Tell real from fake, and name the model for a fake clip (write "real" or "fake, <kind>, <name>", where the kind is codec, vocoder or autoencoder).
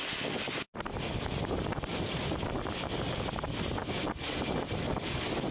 real